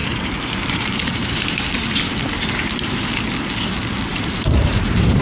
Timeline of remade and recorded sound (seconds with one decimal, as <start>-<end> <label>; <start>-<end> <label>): 0.0-3.1 remade; 3.1-4.1 recorded; 4.1-5.2 remade